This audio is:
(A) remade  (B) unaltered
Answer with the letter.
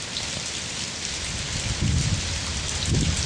B